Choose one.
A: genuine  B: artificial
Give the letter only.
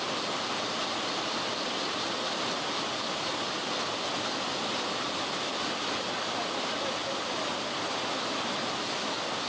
A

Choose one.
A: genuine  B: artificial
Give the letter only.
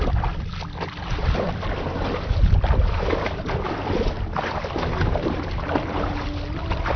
A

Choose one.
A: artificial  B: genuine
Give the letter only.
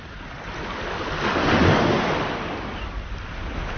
B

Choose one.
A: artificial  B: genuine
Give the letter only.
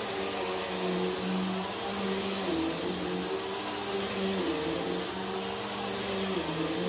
B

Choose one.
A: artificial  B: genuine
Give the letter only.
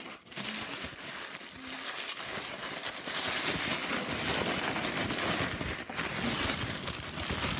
B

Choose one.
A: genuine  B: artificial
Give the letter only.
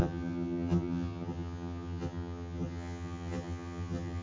B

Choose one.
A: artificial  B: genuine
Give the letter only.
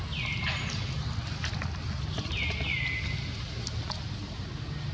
B